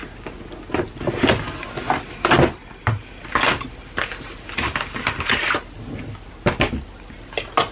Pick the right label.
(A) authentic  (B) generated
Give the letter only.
A